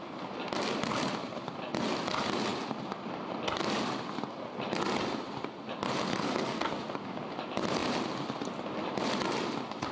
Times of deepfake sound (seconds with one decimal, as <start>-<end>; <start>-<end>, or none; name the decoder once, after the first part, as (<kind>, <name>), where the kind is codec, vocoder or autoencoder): 6.1-6.7 (codec, SNAC)